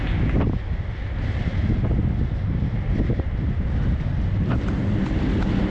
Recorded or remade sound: recorded